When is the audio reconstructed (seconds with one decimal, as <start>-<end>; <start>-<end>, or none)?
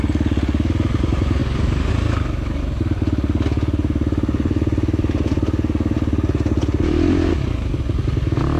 1.4-1.9; 7.3-7.8